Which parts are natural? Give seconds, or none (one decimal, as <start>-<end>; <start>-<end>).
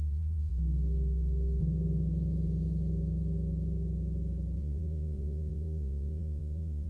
0.5-4.6